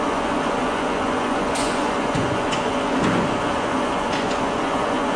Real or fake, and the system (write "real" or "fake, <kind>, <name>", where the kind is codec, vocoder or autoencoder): fake, vocoder, Vocos